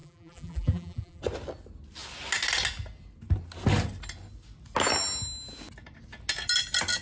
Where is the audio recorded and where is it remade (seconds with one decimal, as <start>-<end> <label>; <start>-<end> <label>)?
0.0-1.2 remade; 1.2-7.0 recorded